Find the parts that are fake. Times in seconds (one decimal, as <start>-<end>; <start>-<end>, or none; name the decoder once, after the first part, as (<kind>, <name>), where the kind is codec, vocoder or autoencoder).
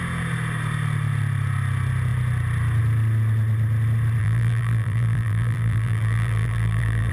4.2-7.1 (vocoder, BigVGAN v2)